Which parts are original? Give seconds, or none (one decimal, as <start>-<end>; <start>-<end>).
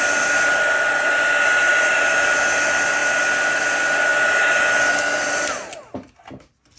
0.0-6.8